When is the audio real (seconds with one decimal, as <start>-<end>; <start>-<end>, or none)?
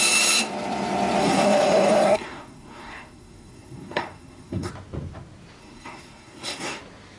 0.0-1.2; 4.7-5.6; 6.8-7.2